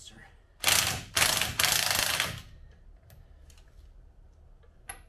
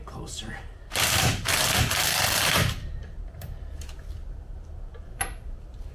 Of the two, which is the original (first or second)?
first